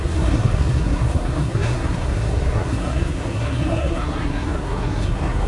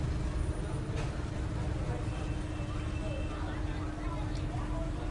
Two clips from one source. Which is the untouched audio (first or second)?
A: second